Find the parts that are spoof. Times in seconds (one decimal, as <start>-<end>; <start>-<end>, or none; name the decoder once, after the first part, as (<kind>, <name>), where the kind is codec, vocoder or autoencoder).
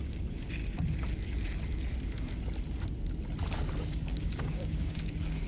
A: 0.0-0.6 (codec, DAC); 3.9-5.5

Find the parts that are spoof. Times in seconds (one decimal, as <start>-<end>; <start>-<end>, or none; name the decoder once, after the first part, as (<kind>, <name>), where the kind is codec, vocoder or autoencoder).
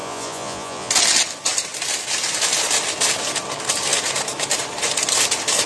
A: 0.0-0.9 (vocoder, Vocos)